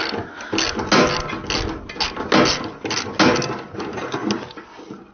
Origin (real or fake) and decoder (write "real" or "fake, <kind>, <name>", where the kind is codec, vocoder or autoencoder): real